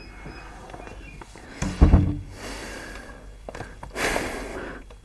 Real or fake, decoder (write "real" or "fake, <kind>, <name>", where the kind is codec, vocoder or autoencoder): real